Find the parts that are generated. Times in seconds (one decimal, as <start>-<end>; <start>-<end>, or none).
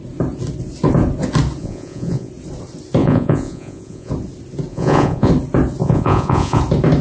1.6-2.3; 3.0-4.1; 4.7-5.3; 5.8-6.6